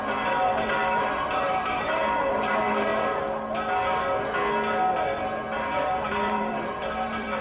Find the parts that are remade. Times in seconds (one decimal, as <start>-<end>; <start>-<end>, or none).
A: 0.0-2.9; 5.6-7.4